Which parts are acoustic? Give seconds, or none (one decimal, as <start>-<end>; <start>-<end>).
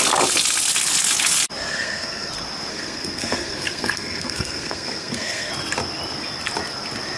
0.0-1.7; 2.3-2.7; 5.5-7.2